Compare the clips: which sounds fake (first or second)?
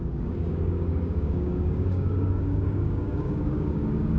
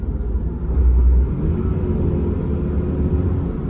first